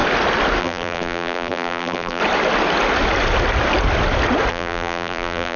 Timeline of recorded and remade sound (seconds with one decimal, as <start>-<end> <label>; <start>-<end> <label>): 0.0-0.6 recorded; 0.6-2.2 remade; 2.2-4.5 recorded; 4.5-5.6 remade